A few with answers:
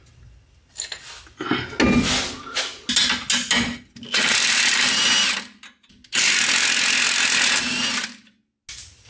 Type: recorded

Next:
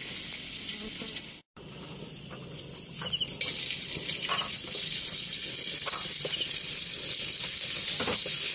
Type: recorded